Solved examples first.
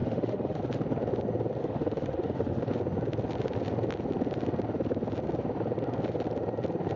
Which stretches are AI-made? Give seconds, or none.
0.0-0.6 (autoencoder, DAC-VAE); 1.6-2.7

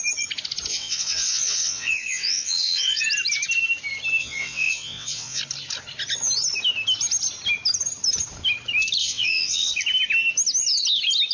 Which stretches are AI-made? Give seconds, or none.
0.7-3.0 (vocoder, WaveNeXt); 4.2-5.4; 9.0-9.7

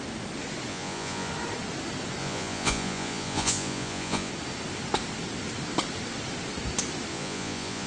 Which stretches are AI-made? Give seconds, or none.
0.7-1.3 (vocoder, Vocos); 2.2-4.3; 7.1-7.9

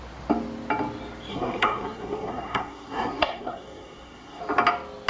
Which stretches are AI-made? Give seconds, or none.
1.3-4.4 (codec, SNAC)

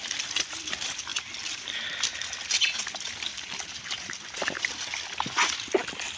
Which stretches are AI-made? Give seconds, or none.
none

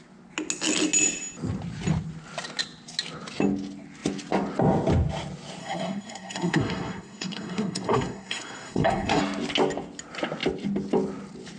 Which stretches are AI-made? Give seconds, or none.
5.6-9.2 (codec, SNAC)

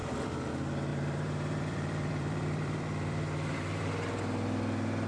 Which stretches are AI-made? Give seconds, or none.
0.0-0.5 (vocoder, BigVGAN v2); 0.9-3.9

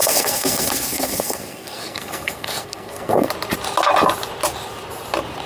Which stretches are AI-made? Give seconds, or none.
0.0-3.3 (codec, SNAC)